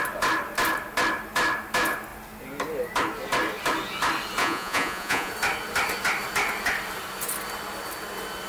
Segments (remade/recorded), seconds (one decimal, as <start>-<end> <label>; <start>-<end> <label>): 0.0-4.4 recorded; 4.4-5.3 remade; 5.3-8.5 recorded